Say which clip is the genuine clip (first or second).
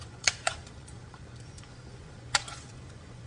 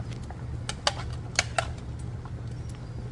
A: second